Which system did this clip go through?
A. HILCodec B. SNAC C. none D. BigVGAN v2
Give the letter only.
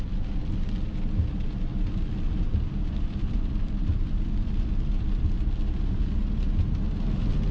C